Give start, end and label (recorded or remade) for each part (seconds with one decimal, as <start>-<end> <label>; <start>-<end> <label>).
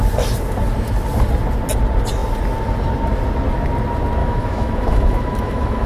0.0-4.2 recorded; 4.2-5.9 remade